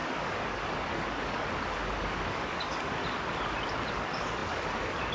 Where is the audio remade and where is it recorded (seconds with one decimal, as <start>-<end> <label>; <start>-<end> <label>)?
0.0-3.0 remade; 3.0-3.9 recorded; 3.9-5.1 remade